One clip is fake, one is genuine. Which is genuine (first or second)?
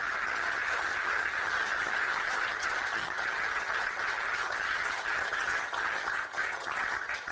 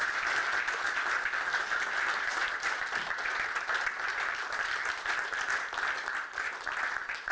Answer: second